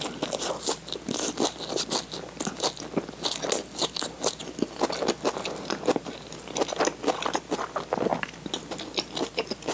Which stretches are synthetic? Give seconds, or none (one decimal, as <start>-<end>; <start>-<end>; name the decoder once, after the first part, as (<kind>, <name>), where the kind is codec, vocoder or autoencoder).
none